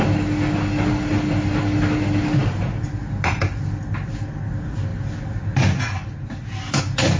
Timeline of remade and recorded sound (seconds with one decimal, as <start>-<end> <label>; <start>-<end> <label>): 0.0-7.2 recorded